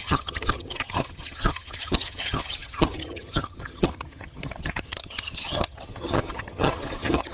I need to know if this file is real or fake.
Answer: fake